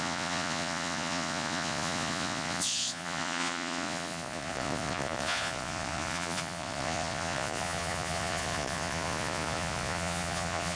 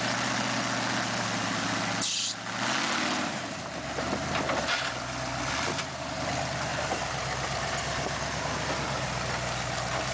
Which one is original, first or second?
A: second